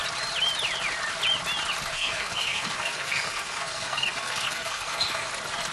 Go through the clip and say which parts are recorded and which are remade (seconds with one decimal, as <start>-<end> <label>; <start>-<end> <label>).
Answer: 0.0-1.9 recorded; 1.9-5.3 remade; 5.3-5.7 recorded